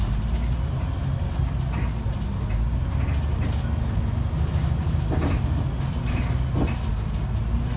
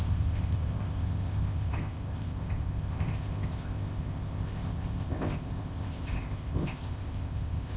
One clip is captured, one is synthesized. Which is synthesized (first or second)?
second